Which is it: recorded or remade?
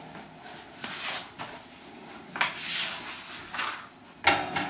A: recorded